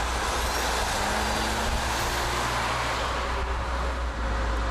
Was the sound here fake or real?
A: real